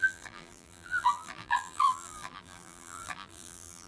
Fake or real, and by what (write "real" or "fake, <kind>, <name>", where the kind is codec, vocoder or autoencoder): fake, vocoder, BigVGAN v2